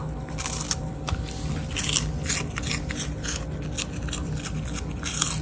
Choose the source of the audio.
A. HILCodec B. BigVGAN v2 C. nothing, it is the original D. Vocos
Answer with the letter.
C